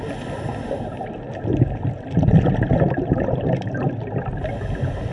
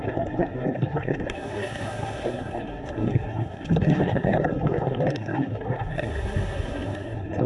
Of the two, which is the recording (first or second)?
first